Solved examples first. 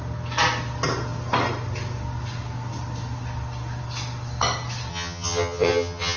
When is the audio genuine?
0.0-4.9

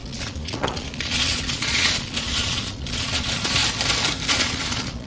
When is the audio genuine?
3.6-4.3